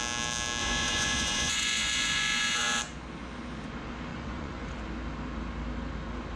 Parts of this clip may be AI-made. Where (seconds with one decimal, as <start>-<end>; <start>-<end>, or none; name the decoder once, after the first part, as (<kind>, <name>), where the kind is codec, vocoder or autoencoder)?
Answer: 0.6-2.8 (vocoder, Vocos); 4.1-4.7